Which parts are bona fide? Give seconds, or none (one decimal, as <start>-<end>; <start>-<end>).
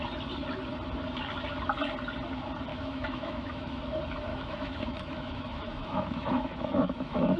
0.0-2.7; 3.8-4.3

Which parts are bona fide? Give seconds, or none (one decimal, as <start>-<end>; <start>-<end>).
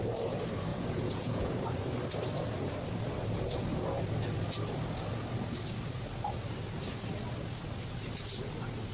0.0-0.7; 1.6-8.9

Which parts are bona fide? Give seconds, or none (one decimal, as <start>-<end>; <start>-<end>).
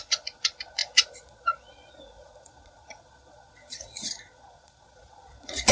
none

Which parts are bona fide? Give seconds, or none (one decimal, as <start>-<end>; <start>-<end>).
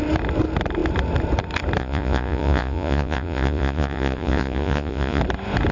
0.0-1.8; 5.2-5.7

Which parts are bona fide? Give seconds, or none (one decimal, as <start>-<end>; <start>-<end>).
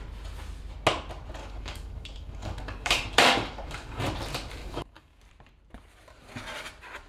0.0-1.4; 4.0-4.6; 5.2-7.1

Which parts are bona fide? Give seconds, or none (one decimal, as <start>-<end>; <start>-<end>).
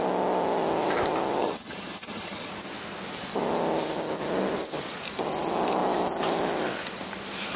0.0-1.4; 2.5-7.6